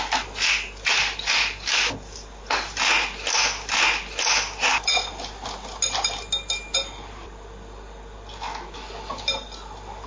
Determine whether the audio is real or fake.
real